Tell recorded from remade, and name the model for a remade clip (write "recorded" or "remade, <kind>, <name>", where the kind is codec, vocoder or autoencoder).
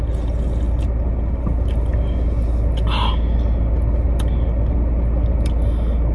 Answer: recorded